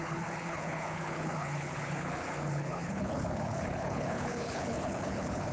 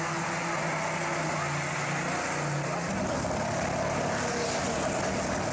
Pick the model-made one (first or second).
first